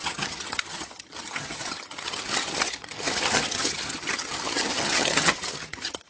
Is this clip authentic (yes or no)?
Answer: no